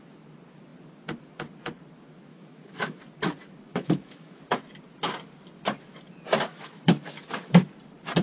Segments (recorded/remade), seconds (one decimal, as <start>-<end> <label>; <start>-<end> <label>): 0.0-2.3 recorded; 2.3-3.0 remade; 3.0-3.7 recorded; 3.7-4.4 remade; 4.4-6.5 recorded; 6.5-7.5 remade; 7.5-8.2 recorded